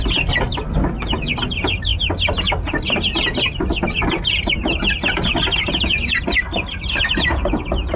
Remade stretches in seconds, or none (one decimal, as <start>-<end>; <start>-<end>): none